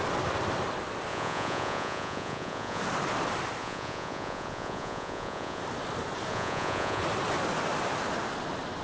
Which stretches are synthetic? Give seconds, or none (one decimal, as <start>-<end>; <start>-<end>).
1.1-2.8; 3.6-5.6; 6.3-7.0